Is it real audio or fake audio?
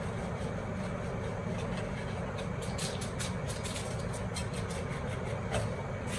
real